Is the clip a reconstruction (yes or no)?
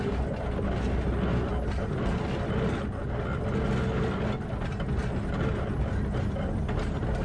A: no